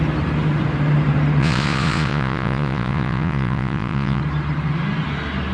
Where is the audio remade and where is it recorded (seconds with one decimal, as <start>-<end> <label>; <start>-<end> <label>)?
0.0-1.4 recorded; 1.4-4.2 remade; 4.2-5.5 recorded